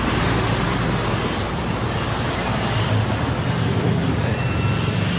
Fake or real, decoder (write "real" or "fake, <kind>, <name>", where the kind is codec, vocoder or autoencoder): real